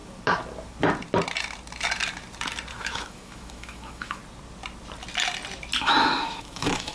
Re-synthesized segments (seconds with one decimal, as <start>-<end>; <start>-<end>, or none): 2.7-4.2; 5.8-6.9